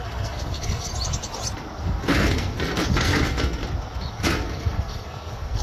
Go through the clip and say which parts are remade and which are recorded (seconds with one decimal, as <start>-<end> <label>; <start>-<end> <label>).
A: 0.0-0.9 remade; 0.9-1.8 recorded; 1.8-3.6 remade; 3.6-4.1 recorded; 4.1-5.6 remade